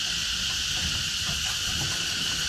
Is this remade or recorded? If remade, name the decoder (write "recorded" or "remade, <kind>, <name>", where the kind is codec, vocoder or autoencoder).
recorded